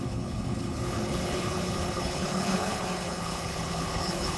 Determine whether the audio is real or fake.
fake